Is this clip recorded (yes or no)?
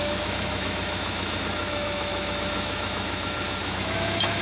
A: no